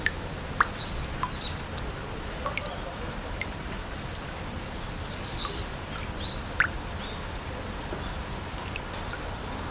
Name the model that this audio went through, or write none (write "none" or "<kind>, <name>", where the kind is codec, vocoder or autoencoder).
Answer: none